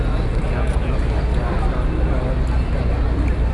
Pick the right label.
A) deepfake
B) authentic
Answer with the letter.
B